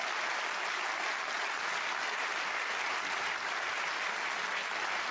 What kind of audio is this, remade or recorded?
recorded